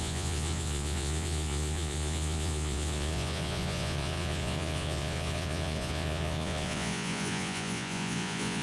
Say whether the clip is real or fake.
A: fake